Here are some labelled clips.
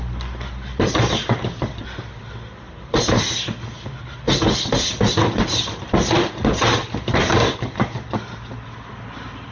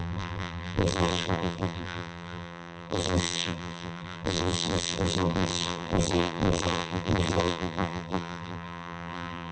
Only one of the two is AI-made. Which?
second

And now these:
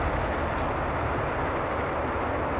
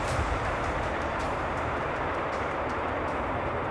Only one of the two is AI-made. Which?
second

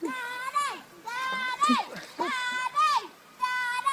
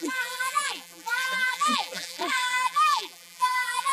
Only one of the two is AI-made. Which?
second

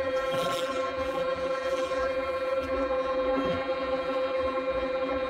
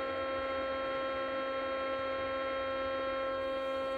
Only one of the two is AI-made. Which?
first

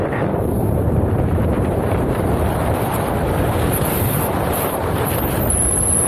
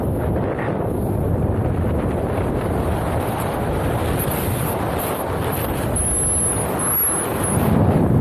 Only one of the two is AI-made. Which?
first